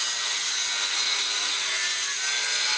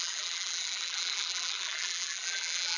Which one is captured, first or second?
first